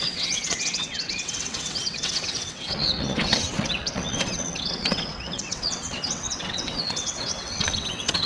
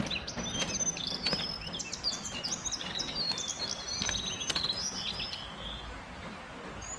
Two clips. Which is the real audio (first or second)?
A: second